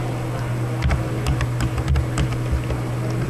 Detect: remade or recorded recorded